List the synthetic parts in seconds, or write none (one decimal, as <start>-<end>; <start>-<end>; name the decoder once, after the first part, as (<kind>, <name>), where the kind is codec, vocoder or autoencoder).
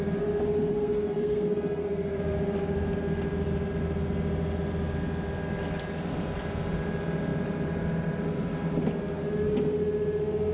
0.7-2.2 (codec, SNAC)